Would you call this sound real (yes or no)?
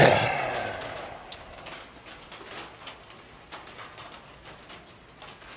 yes